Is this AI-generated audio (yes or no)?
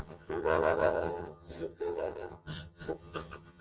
yes